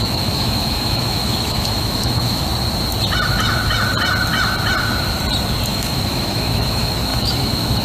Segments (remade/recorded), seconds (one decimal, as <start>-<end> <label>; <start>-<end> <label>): 0.0-2.5 remade; 2.5-5.7 recorded; 5.7-7.8 remade